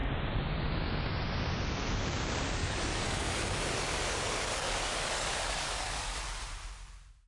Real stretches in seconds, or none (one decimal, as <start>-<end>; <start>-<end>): 0.0-2.6; 6.2-7.3

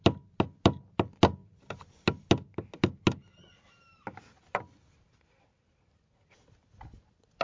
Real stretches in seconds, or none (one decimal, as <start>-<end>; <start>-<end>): 0.0-7.4

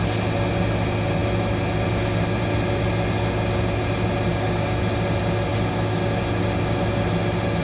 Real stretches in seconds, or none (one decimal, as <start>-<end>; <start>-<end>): 0.0-4.3; 4.8-5.5; 6.2-7.6